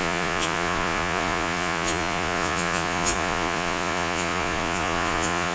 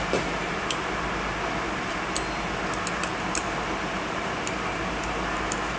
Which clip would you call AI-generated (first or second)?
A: first